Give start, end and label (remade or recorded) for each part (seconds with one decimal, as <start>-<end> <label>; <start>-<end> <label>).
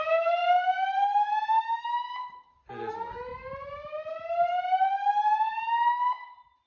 0.0-6.7 recorded